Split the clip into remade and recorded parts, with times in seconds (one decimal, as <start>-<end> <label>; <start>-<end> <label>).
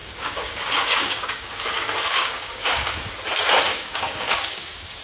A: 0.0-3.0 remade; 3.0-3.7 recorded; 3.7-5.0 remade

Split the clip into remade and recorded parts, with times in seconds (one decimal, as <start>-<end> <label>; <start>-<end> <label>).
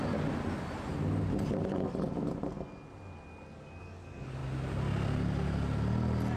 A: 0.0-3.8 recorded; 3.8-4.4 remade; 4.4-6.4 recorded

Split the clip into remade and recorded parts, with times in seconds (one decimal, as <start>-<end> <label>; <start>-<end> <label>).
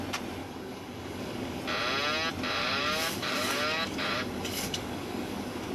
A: 0.0-0.4 recorded; 0.4-1.6 remade; 1.6-2.6 recorded; 2.6-5.7 remade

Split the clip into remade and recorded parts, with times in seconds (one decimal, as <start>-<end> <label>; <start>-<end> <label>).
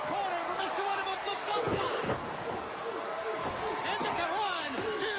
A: 0.0-0.4 recorded; 0.4-3.5 remade; 3.5-4.0 recorded; 4.0-5.2 remade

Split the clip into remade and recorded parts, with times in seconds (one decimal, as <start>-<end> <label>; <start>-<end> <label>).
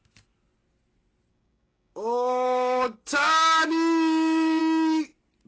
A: 0.0-1.3 recorded; 1.3-4.6 remade; 4.6-5.5 recorded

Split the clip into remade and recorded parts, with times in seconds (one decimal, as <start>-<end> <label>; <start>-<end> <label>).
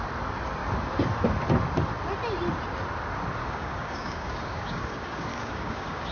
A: 0.0-3.4 recorded; 3.4-6.1 remade